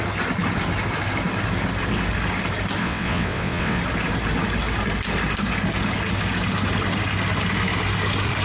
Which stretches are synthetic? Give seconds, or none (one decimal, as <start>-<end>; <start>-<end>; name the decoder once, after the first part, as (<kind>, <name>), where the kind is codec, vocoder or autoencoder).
2.8-3.8 (vocoder, WaveNeXt)